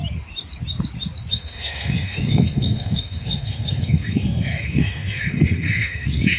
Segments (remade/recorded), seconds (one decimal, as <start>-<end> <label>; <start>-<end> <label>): 0.0-1.3 recorded; 1.3-6.4 remade